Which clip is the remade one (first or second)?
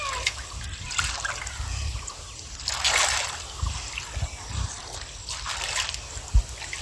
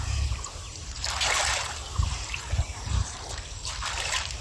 second